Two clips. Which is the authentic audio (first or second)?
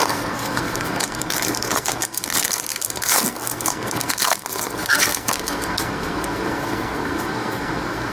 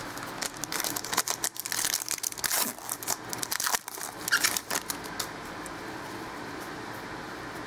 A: second